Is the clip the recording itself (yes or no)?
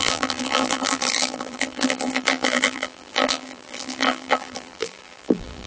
no